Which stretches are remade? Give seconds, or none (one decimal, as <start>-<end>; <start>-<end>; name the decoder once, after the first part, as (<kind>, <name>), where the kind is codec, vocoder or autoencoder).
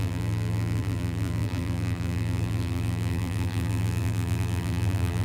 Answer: 0.0-5.2 (vocoder, BigVGAN v2)